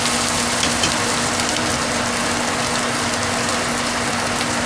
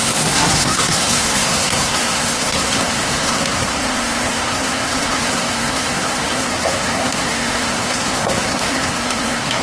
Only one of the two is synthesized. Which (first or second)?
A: second